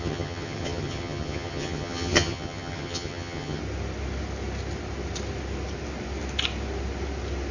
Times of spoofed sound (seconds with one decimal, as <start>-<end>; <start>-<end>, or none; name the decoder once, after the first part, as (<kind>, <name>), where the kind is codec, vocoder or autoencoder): 0.0-3.6 (vocoder, HiFi-GAN)

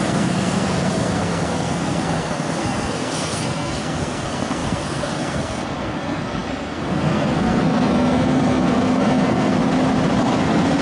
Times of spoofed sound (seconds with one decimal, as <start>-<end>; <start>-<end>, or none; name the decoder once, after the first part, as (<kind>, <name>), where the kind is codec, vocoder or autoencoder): 0.0-9.6 (codec, SNAC); 10.2-10.8

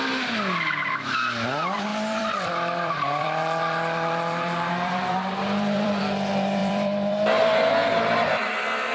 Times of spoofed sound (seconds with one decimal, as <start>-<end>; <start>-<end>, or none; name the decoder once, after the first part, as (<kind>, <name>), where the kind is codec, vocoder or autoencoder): 1.9-6.0 (vocoder, BigVGAN v2); 6.6-7.7

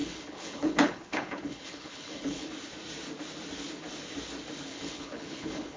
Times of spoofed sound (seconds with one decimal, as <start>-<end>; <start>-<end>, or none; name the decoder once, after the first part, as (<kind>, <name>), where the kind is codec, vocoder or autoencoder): 0.0-2.5 (codec, HILCodec); 4.7-5.8

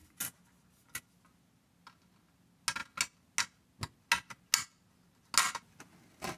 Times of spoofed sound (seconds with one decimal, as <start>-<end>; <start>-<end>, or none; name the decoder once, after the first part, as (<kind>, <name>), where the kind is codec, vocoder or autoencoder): none

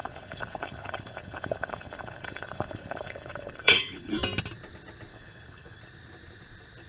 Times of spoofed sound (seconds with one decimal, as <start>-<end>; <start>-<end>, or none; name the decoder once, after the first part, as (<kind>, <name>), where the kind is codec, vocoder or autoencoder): 0.0-4.1 (codec, HILCodec); 5.1-5.8